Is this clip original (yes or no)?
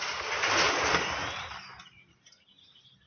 yes